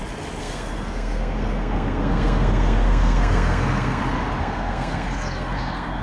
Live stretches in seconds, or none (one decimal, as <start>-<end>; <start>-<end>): 0.0-0.4; 4.0-4.4